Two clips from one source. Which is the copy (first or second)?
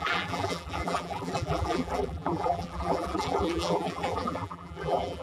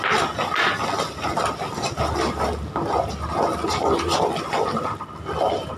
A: first